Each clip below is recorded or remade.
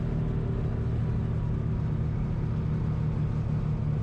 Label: recorded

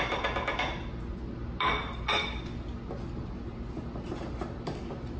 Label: recorded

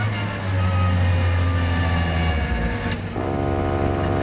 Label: recorded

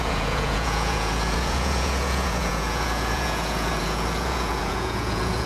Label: remade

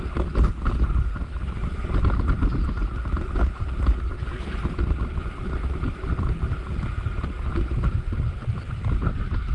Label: recorded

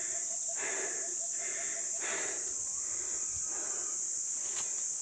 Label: recorded